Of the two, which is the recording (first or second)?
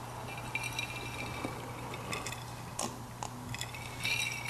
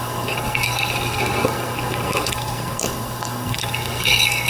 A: first